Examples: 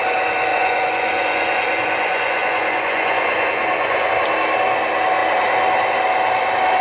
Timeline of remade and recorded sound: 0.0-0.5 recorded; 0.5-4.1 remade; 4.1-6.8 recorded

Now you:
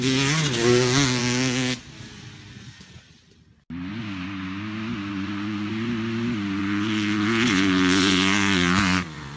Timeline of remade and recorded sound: 0.0-5.1 recorded; 5.1-5.7 remade; 5.7-6.6 recorded; 6.6-9.4 remade

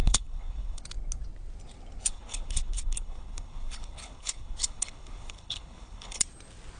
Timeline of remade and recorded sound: 0.0-0.8 remade; 0.8-2.1 recorded; 2.1-6.2 remade; 6.2-6.8 recorded

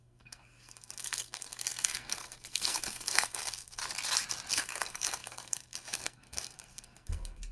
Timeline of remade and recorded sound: 0.0-3.8 remade; 3.8-4.5 recorded; 4.5-7.5 remade

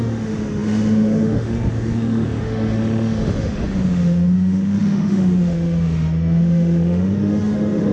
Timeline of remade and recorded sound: 0.0-7.9 remade

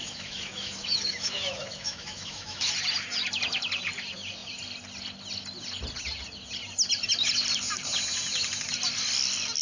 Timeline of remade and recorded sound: 0.0-2.7 remade; 2.7-9.6 recorded